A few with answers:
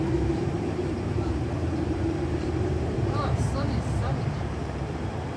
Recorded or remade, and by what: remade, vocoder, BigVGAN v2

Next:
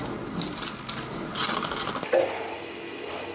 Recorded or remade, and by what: recorded